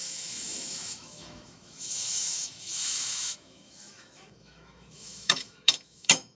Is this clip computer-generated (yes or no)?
yes